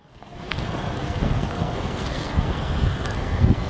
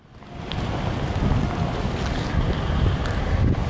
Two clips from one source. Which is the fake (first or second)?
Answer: first